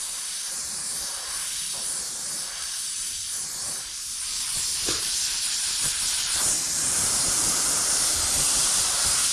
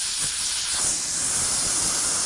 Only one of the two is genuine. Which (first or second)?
second